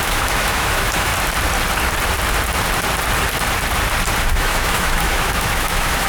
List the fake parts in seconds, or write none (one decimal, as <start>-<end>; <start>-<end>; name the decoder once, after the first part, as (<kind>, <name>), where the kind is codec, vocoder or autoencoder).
0.0-1.1 (autoencoder, DAC-VAE); 4.3-6.1